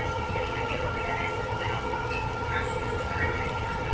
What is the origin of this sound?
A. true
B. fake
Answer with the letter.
B